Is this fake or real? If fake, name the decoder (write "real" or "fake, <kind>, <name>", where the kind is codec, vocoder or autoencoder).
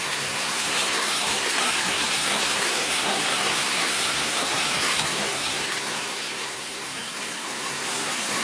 fake, codec, SNAC